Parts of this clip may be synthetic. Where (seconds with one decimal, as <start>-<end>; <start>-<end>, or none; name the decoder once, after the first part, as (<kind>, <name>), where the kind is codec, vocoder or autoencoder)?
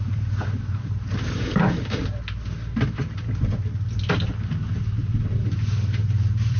0.0-2.0 (vocoder, BigVGAN v2); 4.8-6.6